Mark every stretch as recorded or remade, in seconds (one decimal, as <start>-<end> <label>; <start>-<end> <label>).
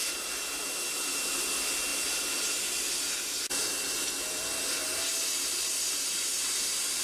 0.0-7.0 recorded